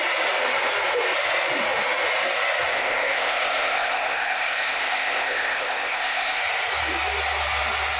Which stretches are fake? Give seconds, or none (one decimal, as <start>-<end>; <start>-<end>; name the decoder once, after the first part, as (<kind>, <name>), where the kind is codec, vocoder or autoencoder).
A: 2.7-6.4 (codec, ZipCodec)